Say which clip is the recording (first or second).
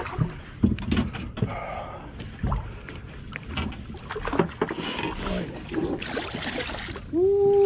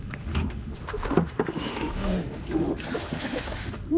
first